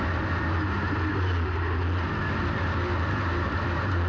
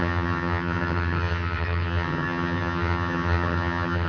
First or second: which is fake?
second